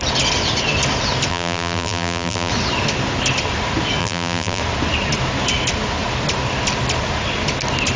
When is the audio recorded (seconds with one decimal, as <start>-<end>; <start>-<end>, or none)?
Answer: 0.0-1.3; 2.5-4.0; 4.6-8.0